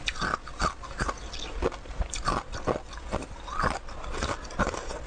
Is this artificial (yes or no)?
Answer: no